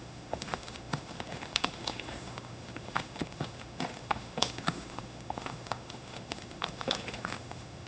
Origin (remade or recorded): remade